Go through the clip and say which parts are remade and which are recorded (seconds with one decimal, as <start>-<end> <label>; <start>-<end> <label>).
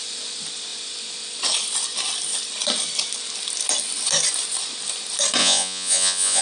0.0-5.4 recorded; 5.4-6.4 remade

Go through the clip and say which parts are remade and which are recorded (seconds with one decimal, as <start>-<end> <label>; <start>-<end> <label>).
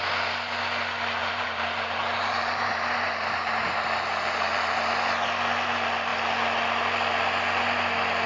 0.0-1.2 recorded; 1.2-4.9 remade; 4.9-8.3 recorded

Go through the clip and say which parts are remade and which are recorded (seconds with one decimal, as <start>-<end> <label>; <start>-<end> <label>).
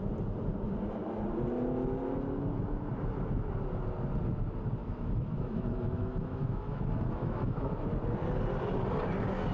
0.0-4.8 recorded; 4.8-7.7 remade; 7.7-9.5 recorded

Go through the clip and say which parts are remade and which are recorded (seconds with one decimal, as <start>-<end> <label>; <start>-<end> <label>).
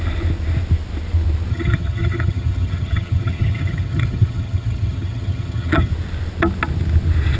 0.0-1.5 recorded; 1.5-5.9 remade; 5.9-7.4 recorded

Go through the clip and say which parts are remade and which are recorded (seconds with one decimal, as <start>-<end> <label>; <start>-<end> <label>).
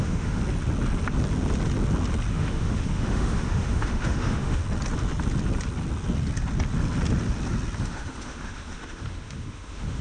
0.0-0.4 remade; 0.4-2.3 recorded; 2.3-4.6 remade; 4.6-7.8 recorded; 7.8-10.0 remade